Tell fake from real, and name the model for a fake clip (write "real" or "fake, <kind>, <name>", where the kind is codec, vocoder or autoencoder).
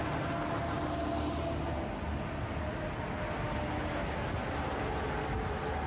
real